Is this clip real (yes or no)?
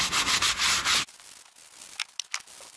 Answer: yes